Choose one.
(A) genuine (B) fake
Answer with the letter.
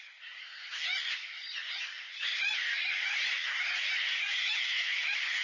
A